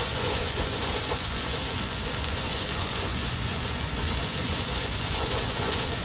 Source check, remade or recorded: remade